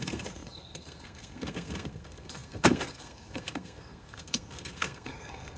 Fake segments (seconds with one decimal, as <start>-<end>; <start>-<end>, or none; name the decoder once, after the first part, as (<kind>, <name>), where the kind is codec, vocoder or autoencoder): 0.0-5.6 (codec, SNAC)